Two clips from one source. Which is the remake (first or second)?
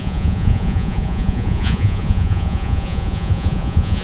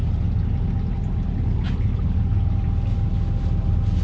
first